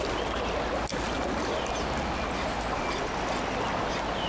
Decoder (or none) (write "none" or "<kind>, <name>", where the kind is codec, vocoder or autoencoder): none